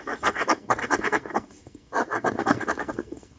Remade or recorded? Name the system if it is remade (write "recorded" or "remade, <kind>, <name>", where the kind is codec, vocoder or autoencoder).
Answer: remade, codec, SNAC